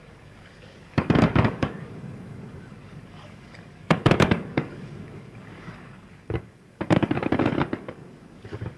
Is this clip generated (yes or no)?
yes